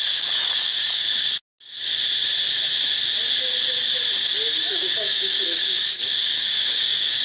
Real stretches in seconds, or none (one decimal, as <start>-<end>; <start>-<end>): 1.4-4.6